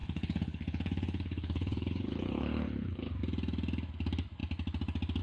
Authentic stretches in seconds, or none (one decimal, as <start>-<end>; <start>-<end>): 3.1-5.2